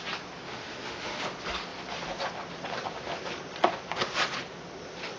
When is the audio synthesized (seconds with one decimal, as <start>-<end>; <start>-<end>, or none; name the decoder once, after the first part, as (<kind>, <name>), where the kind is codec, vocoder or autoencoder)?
0.5-1.2 (autoencoder, DAC-VAE)